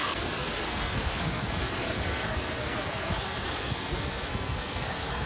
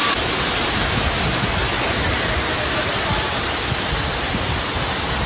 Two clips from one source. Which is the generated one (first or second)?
first